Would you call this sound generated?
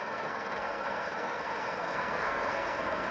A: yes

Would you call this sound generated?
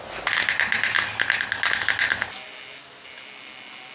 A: no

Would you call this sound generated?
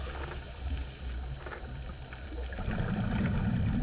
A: no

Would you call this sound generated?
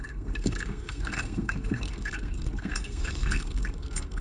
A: yes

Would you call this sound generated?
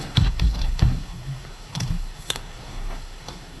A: yes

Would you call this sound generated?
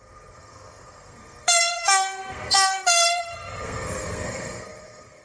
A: yes